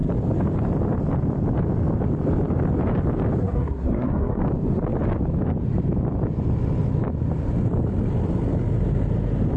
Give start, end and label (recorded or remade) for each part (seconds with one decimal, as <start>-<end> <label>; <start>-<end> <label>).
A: 0.0-3.4 recorded; 3.4-4.4 remade; 4.4-9.6 recorded